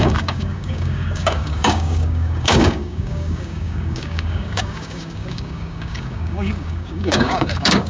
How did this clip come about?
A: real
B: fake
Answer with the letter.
B